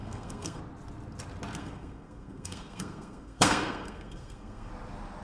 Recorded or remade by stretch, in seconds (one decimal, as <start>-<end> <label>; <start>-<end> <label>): 0.0-0.6 remade; 0.6-1.6 recorded; 1.6-4.7 remade; 4.7-5.2 recorded